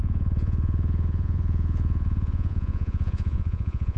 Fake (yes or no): yes